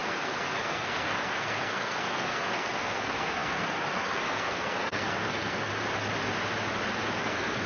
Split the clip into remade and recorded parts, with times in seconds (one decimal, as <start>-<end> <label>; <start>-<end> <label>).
0.0-5.7 remade; 5.7-7.2 recorded; 7.2-7.7 remade